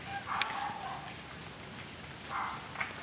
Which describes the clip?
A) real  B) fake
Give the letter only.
A